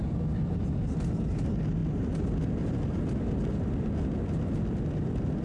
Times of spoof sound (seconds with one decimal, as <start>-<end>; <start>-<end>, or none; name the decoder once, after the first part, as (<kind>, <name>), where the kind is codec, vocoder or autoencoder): none